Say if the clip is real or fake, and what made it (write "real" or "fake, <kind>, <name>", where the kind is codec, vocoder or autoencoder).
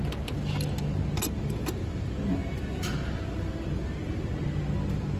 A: real